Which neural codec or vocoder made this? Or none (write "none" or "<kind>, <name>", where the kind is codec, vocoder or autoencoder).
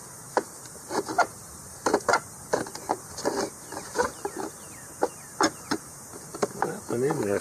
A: vocoder, BigVGAN v2